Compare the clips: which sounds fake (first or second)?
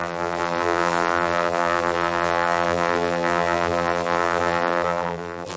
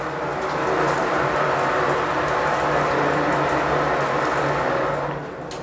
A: first